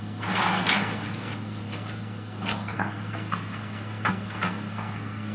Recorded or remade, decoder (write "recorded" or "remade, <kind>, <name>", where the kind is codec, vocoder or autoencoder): remade, codec, SNAC